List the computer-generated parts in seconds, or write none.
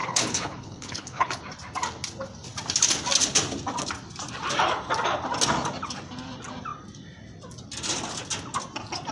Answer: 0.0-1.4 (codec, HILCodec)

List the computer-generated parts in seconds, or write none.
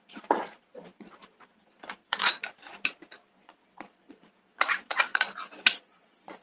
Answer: 0.0-2.2 (vocoder, Vocos); 3.3-6.4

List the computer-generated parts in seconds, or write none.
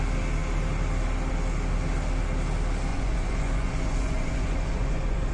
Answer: 2.9-5.3 (vocoder, Vocos)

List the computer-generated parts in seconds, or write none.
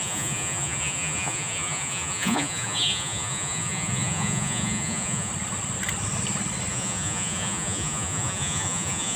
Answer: 0.0-5.3 (vocoder, Vocos); 6.7-9.2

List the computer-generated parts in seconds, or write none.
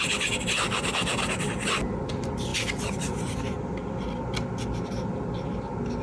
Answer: none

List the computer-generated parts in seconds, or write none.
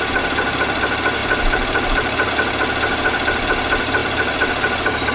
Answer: 1.2-2.3 (vocoder, BigVGAN v2); 4.0-5.1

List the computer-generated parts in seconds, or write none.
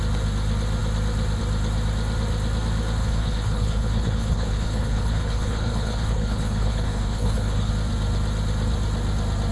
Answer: 3.0-7.7 (codec, HILCodec)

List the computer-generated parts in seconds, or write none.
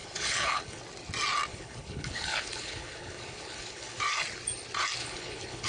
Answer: 0.0-0.8 (codec, HILCodec); 1.5-4.0; 5.0-5.7